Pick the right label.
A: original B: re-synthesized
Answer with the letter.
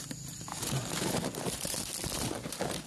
A